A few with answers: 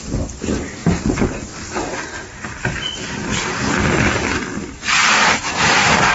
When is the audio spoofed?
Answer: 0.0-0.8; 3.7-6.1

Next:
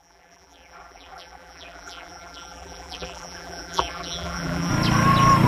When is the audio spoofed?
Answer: 0.0-4.7